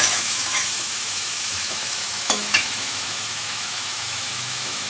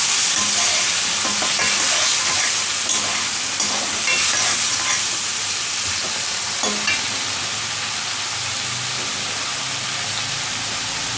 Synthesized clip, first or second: first